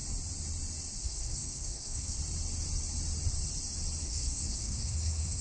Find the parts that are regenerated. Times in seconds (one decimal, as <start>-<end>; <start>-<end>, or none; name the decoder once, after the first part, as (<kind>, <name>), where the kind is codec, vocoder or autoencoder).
1.0-2.2 (codec, SNAC); 4.0-5.4